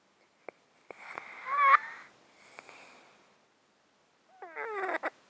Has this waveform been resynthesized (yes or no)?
no